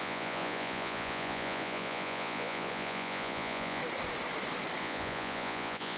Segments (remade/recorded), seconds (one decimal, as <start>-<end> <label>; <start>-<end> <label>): 0.0-3.8 remade; 3.8-4.8 recorded; 4.8-6.0 remade